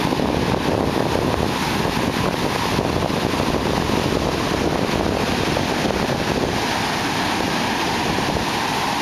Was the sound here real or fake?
real